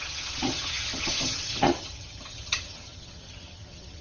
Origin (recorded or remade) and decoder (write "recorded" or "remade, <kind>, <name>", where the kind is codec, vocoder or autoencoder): remade, vocoder, HiFi-GAN